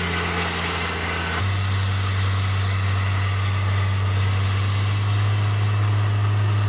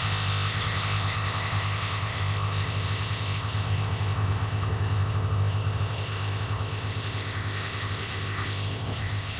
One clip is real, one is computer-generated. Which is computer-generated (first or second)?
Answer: second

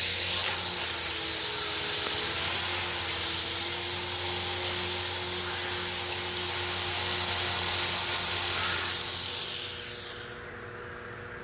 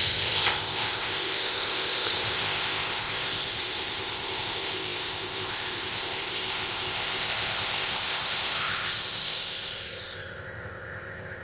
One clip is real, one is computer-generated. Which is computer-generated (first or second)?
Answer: second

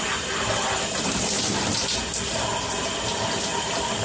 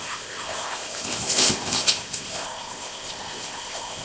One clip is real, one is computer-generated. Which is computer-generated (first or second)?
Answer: second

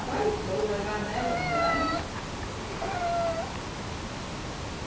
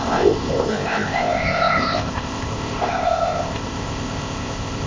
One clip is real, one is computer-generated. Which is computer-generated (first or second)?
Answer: second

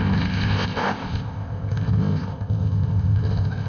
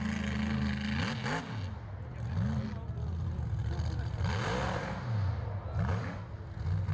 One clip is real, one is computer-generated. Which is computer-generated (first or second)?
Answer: first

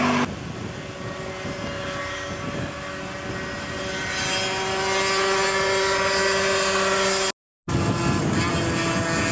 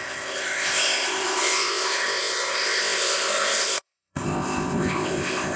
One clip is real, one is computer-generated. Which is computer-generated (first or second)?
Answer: second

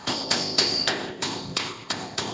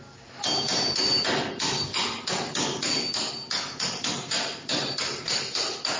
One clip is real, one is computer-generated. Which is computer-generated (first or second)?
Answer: first